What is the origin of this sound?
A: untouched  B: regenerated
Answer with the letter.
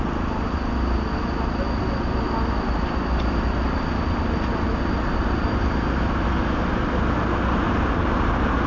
A